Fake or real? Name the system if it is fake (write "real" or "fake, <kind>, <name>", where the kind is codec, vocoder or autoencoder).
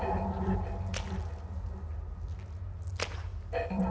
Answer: real